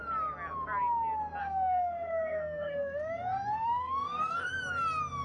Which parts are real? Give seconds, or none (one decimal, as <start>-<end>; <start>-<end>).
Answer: 0.0-1.4; 4.5-5.2